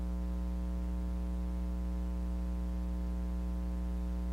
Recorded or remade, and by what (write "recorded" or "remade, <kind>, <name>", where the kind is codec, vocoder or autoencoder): recorded